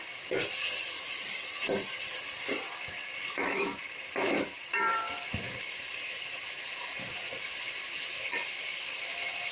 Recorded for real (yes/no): no